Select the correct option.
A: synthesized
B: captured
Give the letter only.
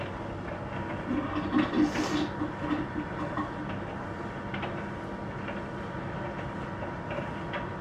B